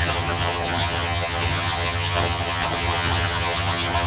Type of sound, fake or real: fake